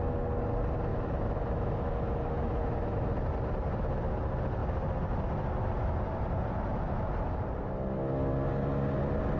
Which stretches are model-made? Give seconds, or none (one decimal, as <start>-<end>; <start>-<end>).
0.9-3.1